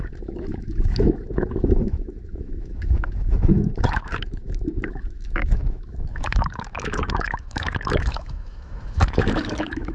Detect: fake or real fake